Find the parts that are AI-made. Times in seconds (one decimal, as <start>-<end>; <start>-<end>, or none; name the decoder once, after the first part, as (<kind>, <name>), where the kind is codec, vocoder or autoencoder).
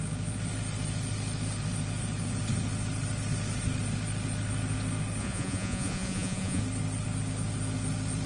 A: 5.2-6.6 (vocoder, Vocos)